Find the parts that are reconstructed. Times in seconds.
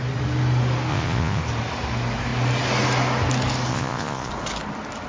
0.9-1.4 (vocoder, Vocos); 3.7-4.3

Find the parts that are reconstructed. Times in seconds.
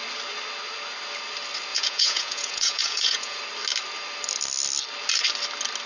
1.7-3.4 (vocoder, Vocos)